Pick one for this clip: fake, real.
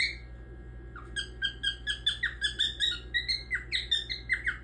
real